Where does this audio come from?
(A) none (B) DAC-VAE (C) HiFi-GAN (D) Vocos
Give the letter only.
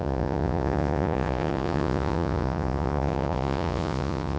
D